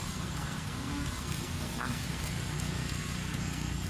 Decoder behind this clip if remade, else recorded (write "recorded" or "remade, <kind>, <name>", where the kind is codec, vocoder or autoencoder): remade, codec, SNAC